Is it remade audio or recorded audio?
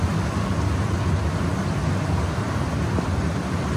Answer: recorded